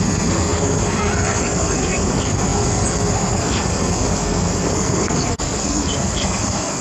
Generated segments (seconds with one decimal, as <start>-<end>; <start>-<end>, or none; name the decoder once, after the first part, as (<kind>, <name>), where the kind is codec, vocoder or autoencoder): 0.0-6.8 (codec, SNAC)

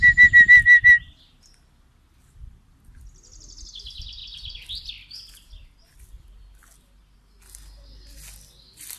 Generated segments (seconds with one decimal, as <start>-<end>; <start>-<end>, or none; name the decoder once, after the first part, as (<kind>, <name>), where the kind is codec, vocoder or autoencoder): none